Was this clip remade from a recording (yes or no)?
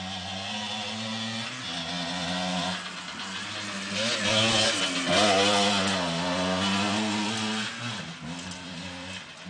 no